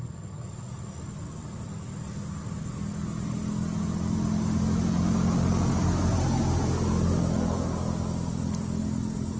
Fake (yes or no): no